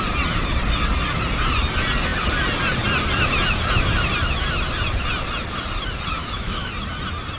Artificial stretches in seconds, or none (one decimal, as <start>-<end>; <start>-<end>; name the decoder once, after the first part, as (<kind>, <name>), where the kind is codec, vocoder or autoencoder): 6.2-6.7 (autoencoder, DAC-VAE)